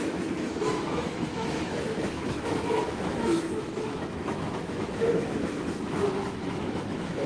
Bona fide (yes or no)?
no